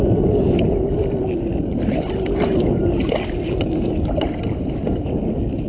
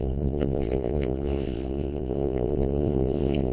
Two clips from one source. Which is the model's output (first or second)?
second